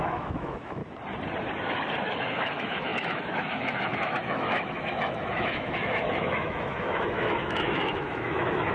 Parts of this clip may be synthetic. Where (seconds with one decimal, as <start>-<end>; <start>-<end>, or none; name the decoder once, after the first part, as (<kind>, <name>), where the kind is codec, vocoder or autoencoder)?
0.0-0.8 (autoencoder, DAC-VAE); 2.0-8.7